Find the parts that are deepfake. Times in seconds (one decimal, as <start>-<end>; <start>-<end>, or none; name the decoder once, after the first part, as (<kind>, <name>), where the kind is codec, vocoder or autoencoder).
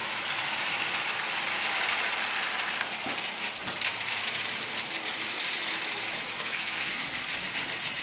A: 6.3-7.0 (codec, SNAC)